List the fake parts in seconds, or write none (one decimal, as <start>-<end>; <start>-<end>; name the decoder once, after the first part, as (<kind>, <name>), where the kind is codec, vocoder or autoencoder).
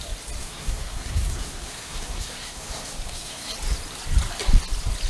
0.4-3.5 (codec, SNAC)